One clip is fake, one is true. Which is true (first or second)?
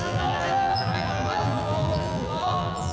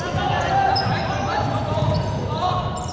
second